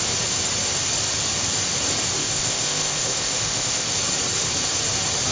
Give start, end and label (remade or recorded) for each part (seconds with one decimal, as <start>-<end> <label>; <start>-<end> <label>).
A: 0.0-2.2 recorded; 2.2-3.9 remade; 3.9-5.3 recorded